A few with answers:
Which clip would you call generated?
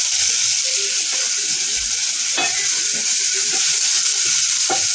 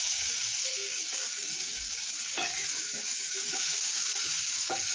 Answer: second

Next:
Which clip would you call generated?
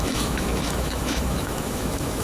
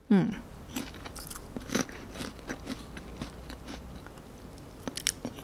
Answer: first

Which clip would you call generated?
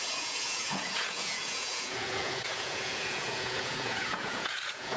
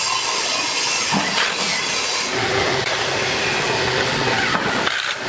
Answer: first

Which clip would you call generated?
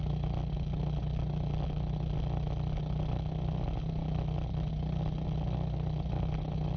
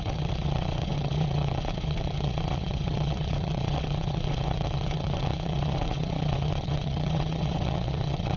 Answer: second